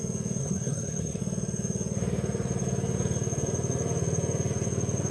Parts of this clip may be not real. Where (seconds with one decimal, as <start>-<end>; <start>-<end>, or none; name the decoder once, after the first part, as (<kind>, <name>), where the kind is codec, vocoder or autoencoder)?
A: 0.4-1.2 (codec, SNAC)